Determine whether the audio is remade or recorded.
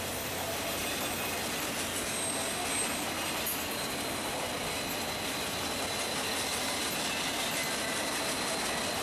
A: recorded